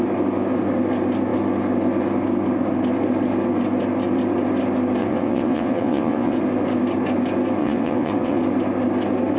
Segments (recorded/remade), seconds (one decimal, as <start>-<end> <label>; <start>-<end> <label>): 0.0-5.0 recorded; 5.0-6.4 remade; 6.4-7.6 recorded; 7.6-8.4 remade; 8.4-9.4 recorded